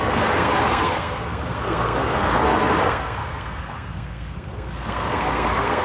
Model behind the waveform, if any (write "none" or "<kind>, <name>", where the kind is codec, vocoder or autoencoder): codec, SNAC